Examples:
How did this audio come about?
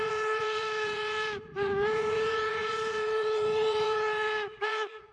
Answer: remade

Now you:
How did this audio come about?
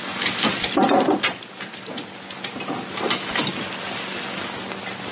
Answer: recorded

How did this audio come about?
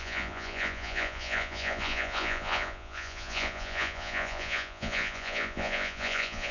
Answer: remade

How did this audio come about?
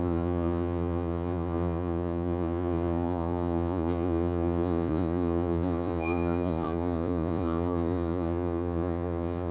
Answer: remade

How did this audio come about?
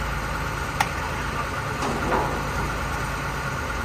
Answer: recorded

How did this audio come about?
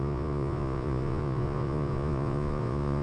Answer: remade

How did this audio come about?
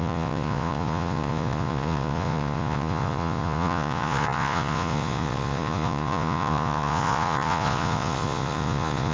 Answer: remade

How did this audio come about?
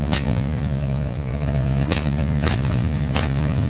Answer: remade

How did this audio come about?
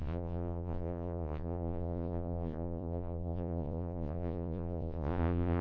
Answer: remade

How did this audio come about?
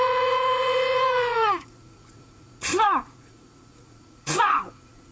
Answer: remade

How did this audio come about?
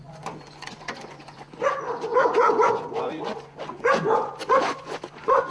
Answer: remade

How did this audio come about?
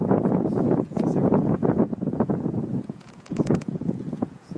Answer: remade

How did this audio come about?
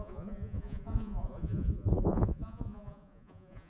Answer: remade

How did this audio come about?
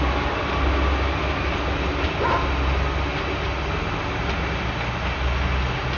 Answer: recorded